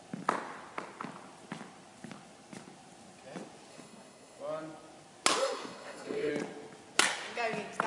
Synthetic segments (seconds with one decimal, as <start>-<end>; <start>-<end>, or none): 3.7-4.4; 5.4-6.3